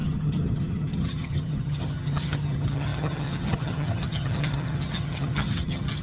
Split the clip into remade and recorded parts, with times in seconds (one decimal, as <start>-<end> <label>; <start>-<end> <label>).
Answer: 0.0-6.0 remade